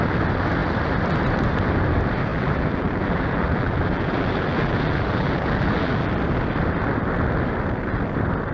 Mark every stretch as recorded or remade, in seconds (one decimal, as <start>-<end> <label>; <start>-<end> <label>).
0.0-2.3 recorded; 2.3-6.1 remade; 6.1-8.5 recorded